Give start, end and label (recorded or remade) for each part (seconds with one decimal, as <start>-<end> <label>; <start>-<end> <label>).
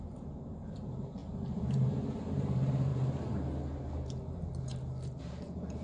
0.0-2.9 remade; 2.9-5.2 recorded; 5.2-5.8 remade